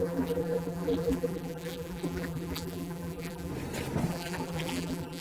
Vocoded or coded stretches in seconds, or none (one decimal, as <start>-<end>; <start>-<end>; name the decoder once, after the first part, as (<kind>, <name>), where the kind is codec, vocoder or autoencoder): 0.0-3.5 (vocoder, BigVGAN v2); 4.1-5.2